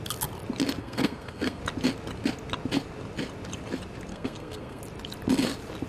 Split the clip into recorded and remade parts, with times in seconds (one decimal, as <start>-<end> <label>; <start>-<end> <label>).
0.0-0.8 recorded; 0.8-1.6 remade; 1.6-4.1 recorded; 4.1-4.8 remade; 4.8-5.9 recorded